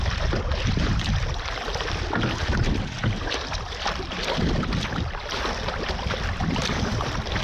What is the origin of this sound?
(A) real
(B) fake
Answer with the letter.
A